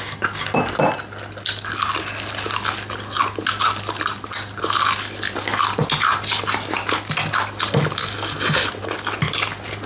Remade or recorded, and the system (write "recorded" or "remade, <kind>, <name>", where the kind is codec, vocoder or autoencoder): recorded